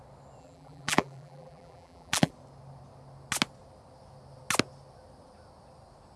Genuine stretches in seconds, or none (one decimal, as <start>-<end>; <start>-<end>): 0.0-0.4; 2.3-6.2